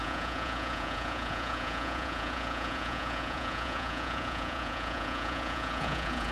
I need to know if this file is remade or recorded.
remade